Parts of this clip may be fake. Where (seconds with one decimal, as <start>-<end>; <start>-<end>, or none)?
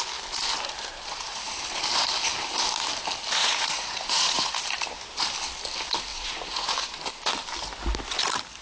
0.9-1.6; 3.4-4.6; 6.1-7.0